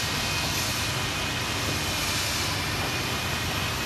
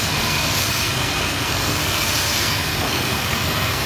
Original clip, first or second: first